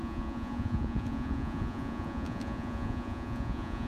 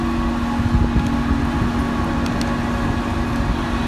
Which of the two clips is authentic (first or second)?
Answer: second